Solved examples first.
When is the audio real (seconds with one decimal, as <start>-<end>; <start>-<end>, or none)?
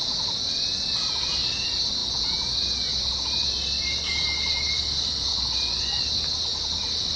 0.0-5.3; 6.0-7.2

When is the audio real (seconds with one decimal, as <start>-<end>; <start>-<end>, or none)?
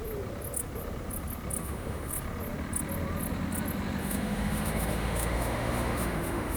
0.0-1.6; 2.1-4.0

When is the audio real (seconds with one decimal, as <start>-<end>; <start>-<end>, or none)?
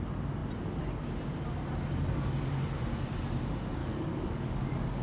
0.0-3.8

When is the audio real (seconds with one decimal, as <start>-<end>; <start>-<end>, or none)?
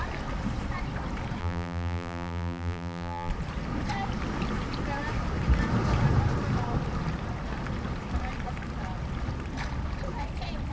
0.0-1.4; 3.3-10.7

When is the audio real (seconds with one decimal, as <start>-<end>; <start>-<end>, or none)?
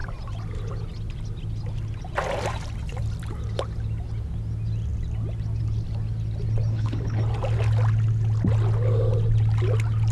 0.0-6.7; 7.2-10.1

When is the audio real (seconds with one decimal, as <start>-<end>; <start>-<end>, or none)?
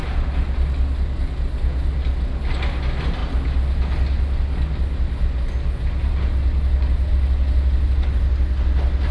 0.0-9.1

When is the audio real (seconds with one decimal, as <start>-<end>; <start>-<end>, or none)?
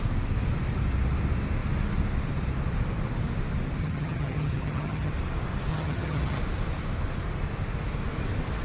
0.0-3.8; 5.1-5.7; 6.4-8.6